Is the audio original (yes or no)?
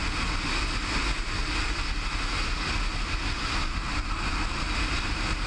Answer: yes